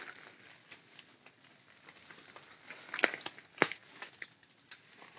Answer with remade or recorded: recorded